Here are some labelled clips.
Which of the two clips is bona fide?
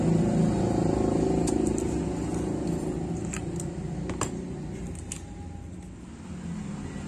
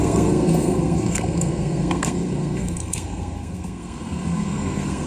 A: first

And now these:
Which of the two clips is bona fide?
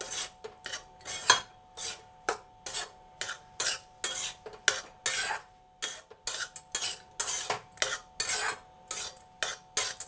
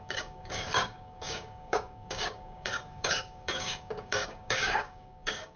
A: first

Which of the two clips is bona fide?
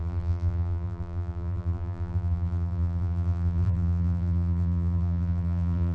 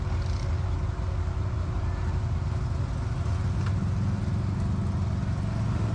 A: second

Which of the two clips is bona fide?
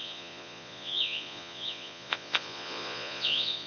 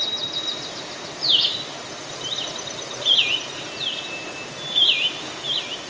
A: second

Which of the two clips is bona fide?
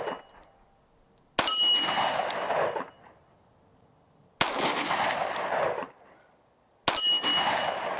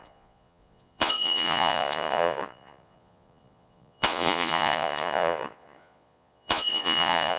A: first